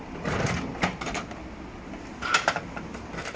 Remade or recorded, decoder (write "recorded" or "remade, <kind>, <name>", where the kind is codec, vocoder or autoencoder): recorded